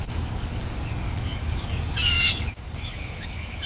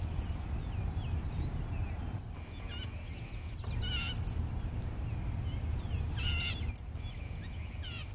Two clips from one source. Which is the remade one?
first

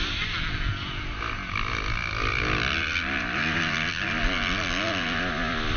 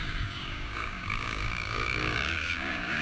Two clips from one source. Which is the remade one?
second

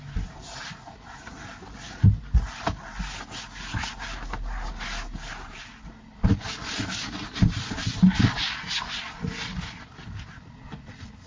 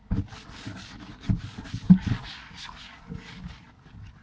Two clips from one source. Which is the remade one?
second